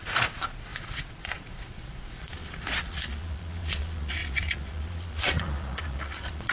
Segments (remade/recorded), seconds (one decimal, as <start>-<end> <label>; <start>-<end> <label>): 0.0-6.5 remade